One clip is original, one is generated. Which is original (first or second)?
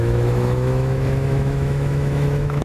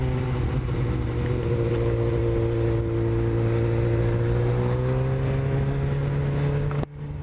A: second